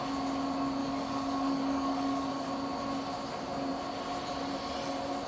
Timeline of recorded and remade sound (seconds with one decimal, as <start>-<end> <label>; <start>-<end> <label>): 0.0-0.8 recorded; 0.8-2.5 remade; 2.5-5.3 recorded